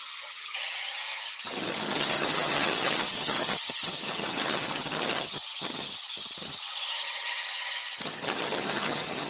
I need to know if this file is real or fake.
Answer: fake